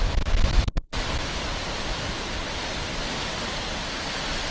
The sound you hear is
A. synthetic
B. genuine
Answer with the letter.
B